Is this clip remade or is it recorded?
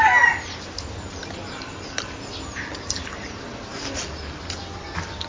recorded